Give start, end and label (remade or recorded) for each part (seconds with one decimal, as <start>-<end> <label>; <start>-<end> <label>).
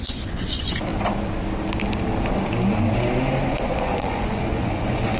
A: 0.0-0.9 remade; 0.9-3.5 recorded; 3.5-5.2 remade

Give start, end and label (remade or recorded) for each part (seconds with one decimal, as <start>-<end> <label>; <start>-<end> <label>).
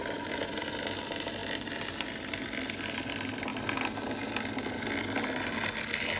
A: 0.0-6.2 recorded